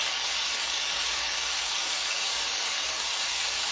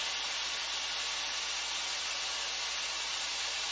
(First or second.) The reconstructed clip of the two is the first